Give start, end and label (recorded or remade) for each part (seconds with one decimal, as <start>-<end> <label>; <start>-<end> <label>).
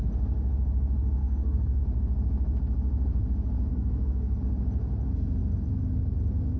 0.0-1.2 recorded; 1.2-1.8 remade; 1.8-3.7 recorded; 3.7-4.4 remade; 4.4-6.6 recorded